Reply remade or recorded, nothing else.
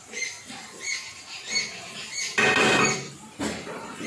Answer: recorded